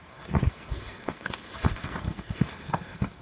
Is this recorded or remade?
remade